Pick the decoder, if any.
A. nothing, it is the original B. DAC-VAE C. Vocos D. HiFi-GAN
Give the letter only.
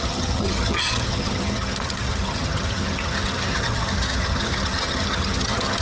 D